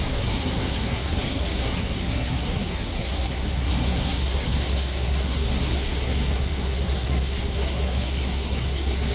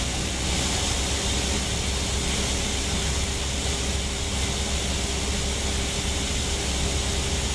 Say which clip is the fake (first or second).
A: first